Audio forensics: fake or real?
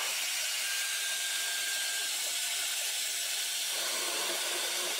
real